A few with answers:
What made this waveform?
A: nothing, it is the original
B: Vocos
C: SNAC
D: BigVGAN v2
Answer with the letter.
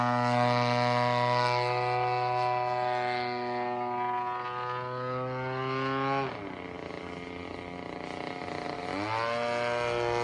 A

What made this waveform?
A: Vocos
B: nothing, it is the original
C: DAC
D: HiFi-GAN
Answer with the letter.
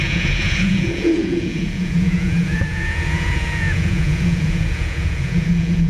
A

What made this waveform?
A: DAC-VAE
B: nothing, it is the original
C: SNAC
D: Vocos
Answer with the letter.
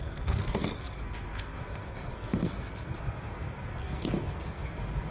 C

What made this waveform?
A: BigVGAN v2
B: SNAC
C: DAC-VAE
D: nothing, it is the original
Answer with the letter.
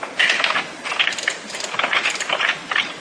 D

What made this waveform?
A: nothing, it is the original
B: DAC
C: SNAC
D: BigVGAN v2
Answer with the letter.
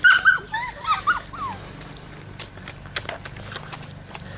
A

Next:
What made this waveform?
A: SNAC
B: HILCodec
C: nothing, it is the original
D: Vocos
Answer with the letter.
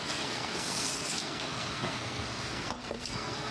A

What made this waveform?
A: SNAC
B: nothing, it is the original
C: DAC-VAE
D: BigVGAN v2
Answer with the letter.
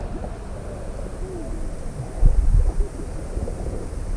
B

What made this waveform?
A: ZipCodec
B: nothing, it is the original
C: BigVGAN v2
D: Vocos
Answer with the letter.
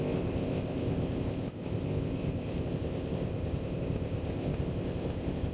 A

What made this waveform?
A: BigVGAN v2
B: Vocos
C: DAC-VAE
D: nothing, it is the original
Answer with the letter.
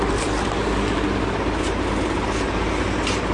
D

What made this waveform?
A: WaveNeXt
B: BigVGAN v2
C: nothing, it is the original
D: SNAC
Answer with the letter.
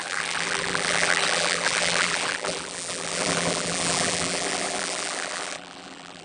B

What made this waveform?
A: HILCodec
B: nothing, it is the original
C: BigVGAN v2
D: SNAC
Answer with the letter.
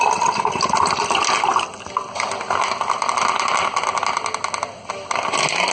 B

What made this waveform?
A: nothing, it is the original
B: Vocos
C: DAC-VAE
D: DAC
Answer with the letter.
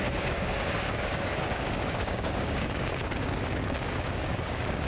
D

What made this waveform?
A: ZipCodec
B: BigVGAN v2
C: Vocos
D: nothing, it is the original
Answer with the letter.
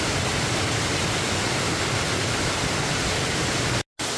D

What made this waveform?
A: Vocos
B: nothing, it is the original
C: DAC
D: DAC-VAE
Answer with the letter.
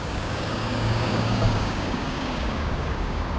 C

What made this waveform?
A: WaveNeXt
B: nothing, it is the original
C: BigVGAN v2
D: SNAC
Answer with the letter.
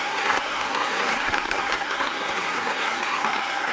D